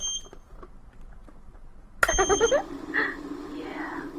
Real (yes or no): yes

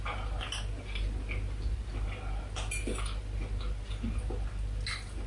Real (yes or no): yes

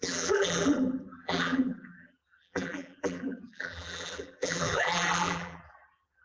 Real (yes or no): no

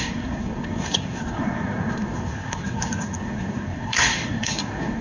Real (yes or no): no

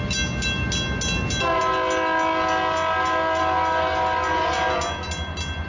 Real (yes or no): yes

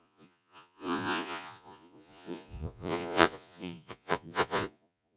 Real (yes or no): no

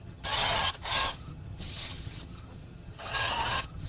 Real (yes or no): no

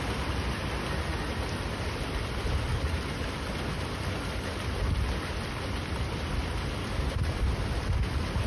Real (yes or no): yes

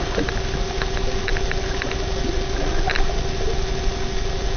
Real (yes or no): yes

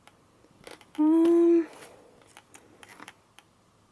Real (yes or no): yes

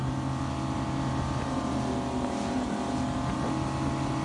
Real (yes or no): yes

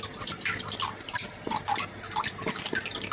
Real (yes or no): yes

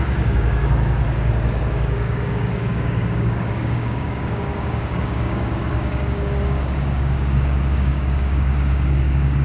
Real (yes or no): no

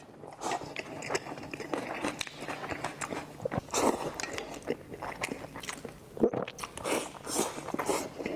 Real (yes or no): yes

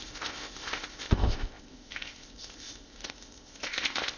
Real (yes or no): no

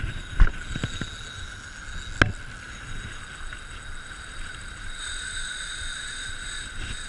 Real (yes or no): yes